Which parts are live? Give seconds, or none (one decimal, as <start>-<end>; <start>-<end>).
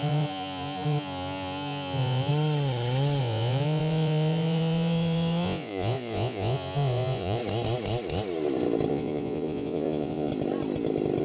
2.3-3.2; 7.4-8.9; 10.3-11.2